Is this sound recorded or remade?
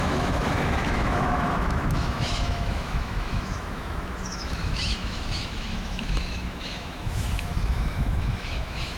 remade